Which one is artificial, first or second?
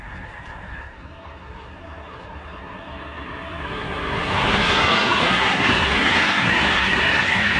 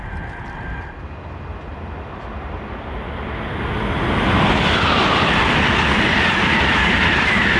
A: first